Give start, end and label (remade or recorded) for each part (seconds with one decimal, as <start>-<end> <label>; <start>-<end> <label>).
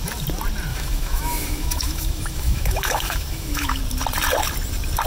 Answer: 0.0-0.7 recorded; 0.7-3.8 remade; 3.8-5.1 recorded